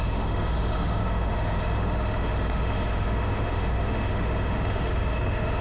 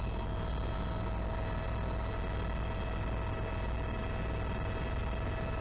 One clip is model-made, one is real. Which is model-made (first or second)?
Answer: first